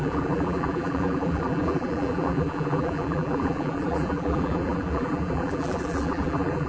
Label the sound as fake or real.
fake